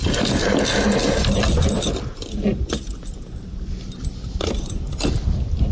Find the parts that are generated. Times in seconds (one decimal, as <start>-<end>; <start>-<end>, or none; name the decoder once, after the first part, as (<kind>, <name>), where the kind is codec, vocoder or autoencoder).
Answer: 1.0-4.4 (vocoder, BigVGAN v2)